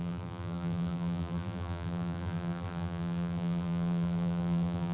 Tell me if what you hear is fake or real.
fake